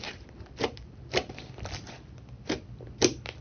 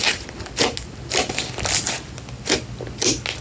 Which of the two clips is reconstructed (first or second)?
first